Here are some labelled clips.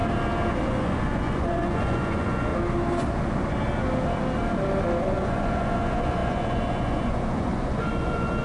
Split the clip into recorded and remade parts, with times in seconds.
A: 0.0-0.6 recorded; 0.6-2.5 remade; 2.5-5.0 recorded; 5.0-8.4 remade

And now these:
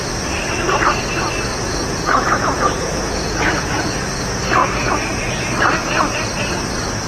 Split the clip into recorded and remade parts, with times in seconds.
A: 0.0-1.5 recorded; 1.5-3.9 remade; 3.9-4.6 recorded; 4.6-5.4 remade; 5.4-7.1 recorded

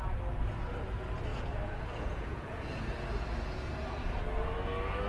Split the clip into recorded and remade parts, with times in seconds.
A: 0.0-1.3 recorded; 1.3-4.2 remade; 4.2-5.1 recorded

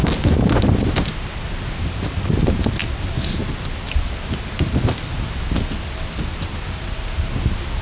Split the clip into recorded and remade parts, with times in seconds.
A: 0.0-7.8 recorded

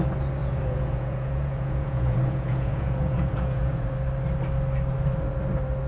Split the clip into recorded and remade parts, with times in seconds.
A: 0.0-0.4 recorded; 0.4-3.9 remade; 3.9-5.9 recorded

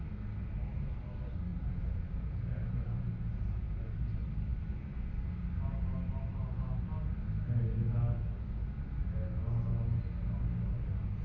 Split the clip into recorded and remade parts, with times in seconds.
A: 0.0-1.5 recorded; 1.5-3.8 remade; 3.8-11.2 recorded

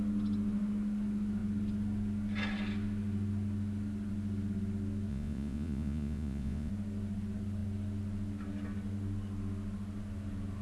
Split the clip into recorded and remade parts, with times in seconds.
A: 0.0-5.1 recorded; 5.1-6.7 remade; 6.7-10.6 recorded

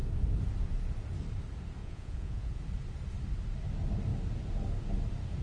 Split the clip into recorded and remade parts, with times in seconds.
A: 0.0-1.8 recorded; 1.8-2.6 remade; 2.6-5.4 recorded